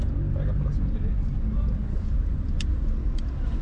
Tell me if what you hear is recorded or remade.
recorded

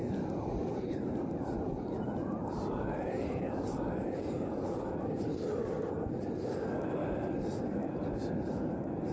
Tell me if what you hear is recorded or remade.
recorded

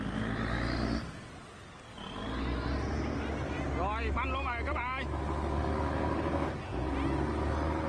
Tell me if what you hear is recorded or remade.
recorded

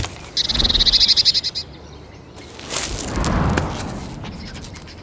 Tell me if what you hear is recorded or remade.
recorded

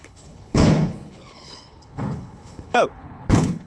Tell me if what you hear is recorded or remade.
remade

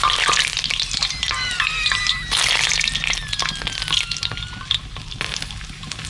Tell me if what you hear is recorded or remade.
recorded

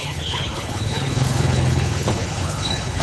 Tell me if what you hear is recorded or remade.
remade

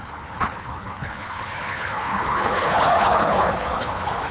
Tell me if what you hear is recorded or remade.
remade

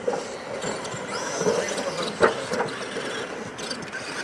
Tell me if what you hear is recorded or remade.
recorded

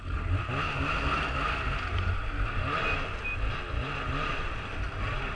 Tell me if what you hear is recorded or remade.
recorded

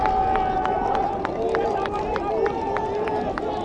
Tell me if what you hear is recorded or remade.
recorded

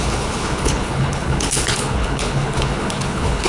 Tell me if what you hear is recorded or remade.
remade